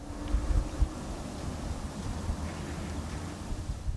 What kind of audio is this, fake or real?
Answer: real